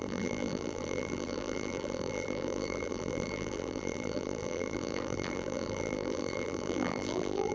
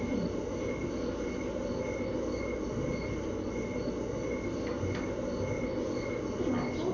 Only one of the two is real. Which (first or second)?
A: second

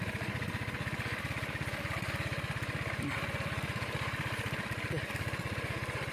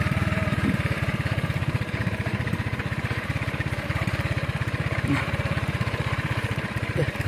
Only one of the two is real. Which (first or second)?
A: first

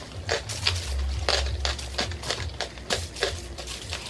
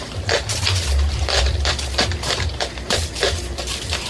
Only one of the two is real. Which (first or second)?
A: first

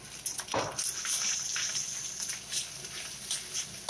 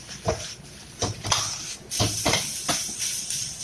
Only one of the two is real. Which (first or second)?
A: first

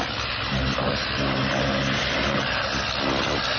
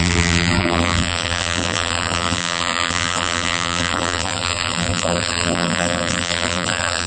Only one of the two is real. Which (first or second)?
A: first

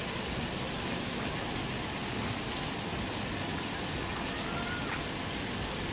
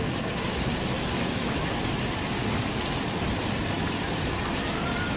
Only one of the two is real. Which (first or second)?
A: first